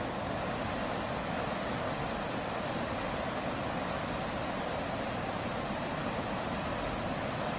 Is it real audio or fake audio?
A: real